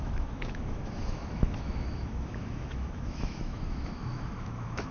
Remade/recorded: remade